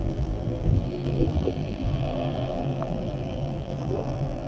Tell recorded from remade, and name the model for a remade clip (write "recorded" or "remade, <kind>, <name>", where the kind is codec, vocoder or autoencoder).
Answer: remade, vocoder, BigVGAN v2